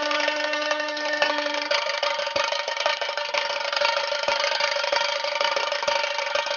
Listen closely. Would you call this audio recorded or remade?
remade